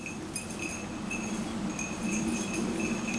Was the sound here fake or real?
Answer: real